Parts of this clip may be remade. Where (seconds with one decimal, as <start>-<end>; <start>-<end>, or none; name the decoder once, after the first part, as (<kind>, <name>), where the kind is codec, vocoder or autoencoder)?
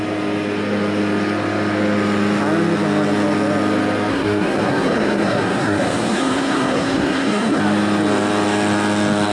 4.1-7.6 (codec, SNAC)